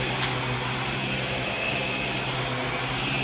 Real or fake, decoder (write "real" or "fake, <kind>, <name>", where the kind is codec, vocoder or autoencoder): real